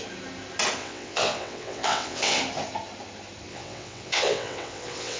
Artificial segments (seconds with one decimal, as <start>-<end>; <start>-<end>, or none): 0.8-2.4; 3.5-5.2

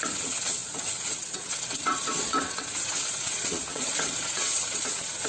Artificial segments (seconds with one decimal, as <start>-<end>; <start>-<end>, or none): 0.0-5.3

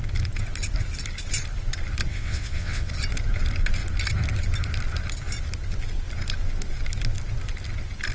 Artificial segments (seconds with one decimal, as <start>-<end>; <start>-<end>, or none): 2.1-2.9

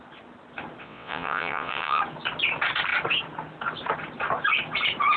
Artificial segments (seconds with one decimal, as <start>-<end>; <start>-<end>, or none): 0.8-2.0

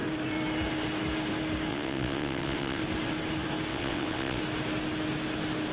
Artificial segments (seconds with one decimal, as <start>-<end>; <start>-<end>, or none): 1.7-2.8; 3.7-4.4

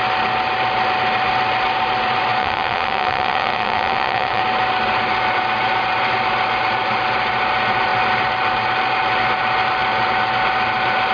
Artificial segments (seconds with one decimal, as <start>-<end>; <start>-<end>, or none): 2.4-4.4

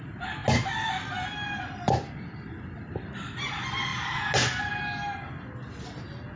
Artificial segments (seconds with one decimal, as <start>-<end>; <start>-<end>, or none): none